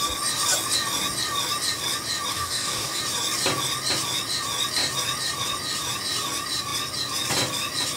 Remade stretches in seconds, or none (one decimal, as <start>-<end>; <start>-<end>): 2.3-3.0